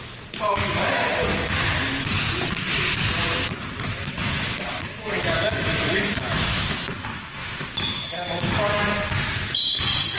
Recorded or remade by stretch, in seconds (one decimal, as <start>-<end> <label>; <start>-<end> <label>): 0.0-4.0 recorded; 4.0-8.0 remade; 8.0-10.2 recorded